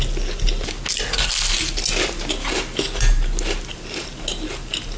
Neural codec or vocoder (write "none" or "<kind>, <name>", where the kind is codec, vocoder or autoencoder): none